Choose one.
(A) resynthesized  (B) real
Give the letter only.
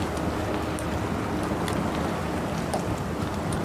B